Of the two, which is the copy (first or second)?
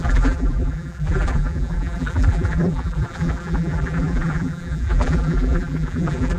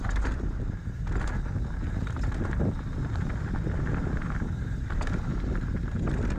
first